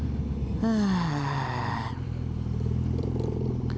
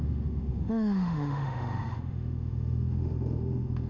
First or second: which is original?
first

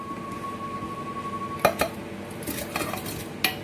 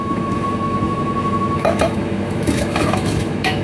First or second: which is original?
first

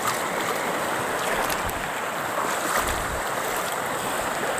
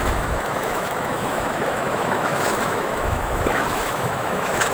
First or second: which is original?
first